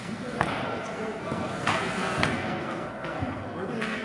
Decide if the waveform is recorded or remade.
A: remade